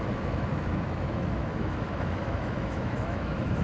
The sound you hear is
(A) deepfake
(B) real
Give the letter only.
A